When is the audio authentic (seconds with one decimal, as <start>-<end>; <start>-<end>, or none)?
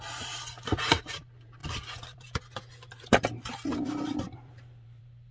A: 3.7-4.2